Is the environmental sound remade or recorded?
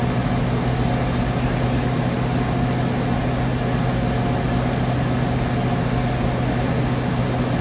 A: recorded